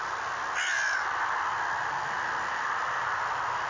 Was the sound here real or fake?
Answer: real